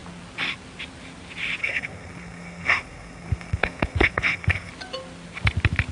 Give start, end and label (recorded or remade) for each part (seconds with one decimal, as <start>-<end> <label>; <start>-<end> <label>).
0.0-1.6 recorded; 1.6-4.7 remade; 4.7-5.9 recorded